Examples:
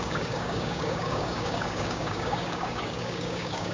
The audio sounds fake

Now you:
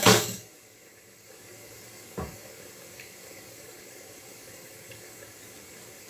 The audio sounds fake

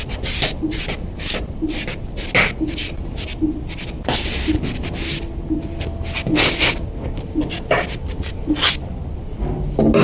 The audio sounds real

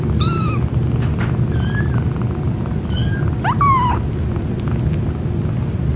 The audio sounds real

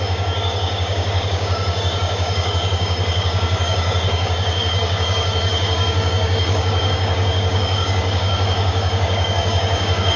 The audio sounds fake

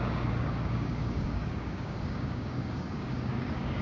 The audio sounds fake